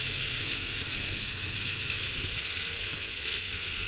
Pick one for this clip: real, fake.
fake